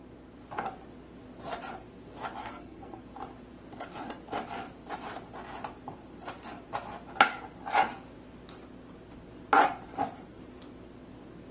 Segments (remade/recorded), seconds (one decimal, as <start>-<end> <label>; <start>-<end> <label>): 0.0-2.4 recorded; 2.4-3.0 remade; 3.0-11.5 recorded